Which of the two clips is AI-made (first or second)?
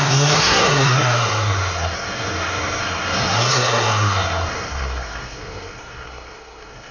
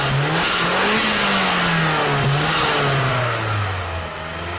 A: first